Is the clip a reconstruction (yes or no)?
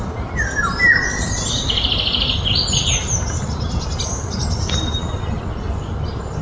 no